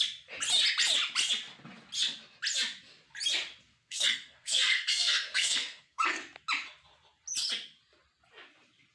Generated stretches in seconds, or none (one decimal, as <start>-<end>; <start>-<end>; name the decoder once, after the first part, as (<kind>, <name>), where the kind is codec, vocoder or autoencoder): 3.7-6.2 (codec, SNAC)